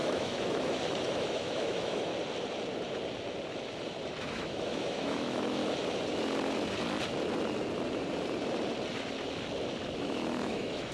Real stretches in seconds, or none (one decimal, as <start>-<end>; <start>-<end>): 2.1-4.2; 5.6-10.0